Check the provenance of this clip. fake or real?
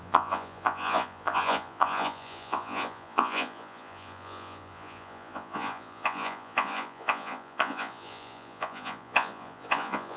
fake